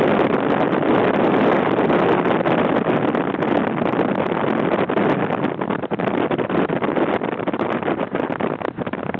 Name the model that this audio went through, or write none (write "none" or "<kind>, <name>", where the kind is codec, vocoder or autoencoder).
none